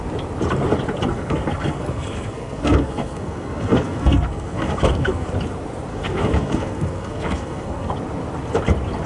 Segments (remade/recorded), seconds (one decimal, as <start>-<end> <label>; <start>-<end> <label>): 0.0-1.1 recorded; 1.1-5.3 remade; 5.3-5.9 recorded; 5.9-7.9 remade; 7.9-9.1 recorded